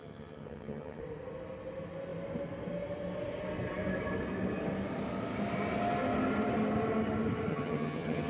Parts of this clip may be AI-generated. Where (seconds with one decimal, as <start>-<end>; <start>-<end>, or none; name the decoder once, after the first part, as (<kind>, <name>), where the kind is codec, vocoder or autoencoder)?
0.0-1.0 (vocoder, HiFi-GAN); 7.5-8.3